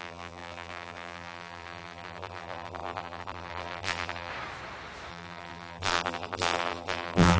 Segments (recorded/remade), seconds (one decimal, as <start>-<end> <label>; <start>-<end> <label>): 0.0-4.3 remade; 4.3-5.1 recorded; 5.1-7.4 remade